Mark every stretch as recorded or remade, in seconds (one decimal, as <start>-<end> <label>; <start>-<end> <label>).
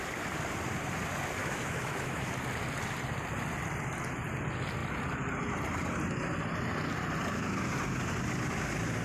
0.0-1.4 recorded; 1.4-2.3 remade; 2.3-9.0 recorded